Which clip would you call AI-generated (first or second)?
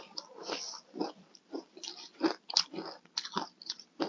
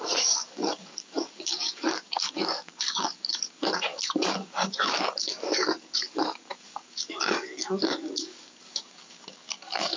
second